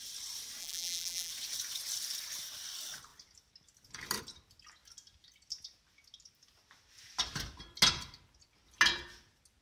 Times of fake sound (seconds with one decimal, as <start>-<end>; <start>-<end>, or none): 0.6-1.3

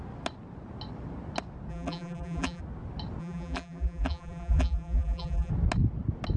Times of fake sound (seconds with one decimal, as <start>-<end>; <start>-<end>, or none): 1.7-2.6; 3.2-5.5

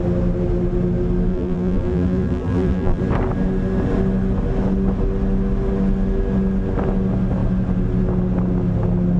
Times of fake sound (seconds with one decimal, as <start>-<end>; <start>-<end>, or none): 1.3-3.0

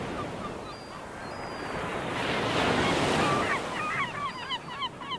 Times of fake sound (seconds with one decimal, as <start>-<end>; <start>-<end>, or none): none

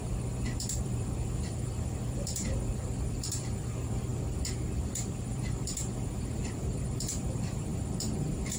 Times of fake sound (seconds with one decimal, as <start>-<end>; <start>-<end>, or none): 0.6-4.1; 4.8-8.6

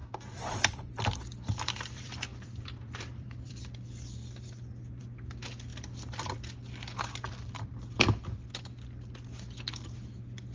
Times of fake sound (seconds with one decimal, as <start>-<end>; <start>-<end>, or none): 0.0-3.6

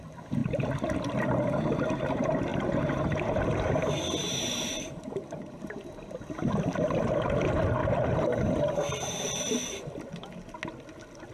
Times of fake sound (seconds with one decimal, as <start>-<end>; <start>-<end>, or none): 2.5-3.8; 4.2-6.3; 7.8-9.3